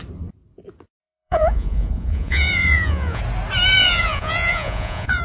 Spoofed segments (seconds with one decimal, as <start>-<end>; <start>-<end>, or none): 1.0-3.2; 3.8-5.2